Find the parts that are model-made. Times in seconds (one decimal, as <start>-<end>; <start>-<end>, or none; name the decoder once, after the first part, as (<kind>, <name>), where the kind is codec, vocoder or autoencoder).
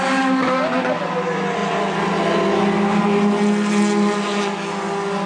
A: none